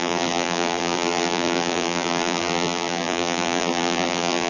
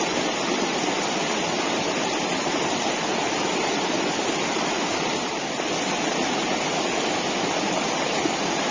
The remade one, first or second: first